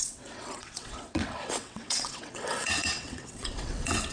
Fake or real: fake